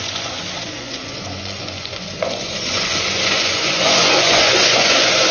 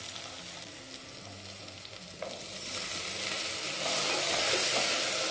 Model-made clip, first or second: first